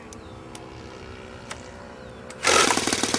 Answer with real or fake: real